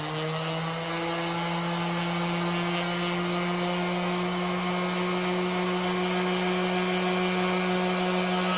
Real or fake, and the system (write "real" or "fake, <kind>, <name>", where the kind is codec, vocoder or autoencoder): real